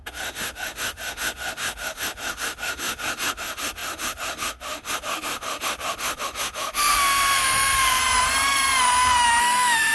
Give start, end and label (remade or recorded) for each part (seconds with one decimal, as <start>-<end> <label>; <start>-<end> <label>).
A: 0.0-8.0 remade; 8.0-9.4 recorded; 9.4-9.9 remade